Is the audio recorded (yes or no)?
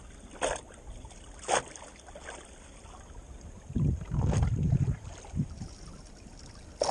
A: yes